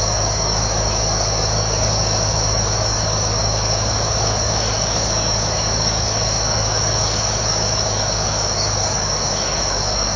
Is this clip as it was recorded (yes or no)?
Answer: no